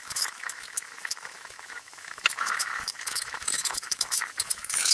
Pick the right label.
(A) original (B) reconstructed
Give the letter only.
B